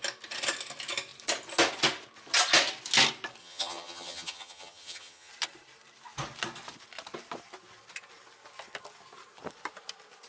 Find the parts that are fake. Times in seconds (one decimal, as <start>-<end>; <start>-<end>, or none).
3.4-5.3